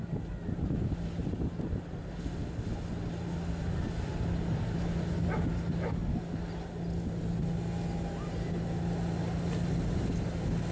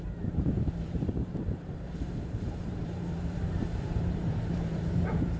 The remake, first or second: second